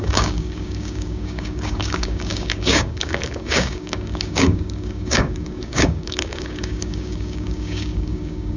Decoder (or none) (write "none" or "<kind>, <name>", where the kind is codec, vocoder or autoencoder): codec, DAC